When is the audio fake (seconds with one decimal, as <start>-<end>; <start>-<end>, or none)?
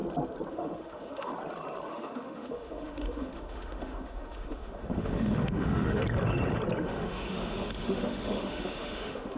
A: 0.5-1.3; 1.9-6.0; 6.8-9.4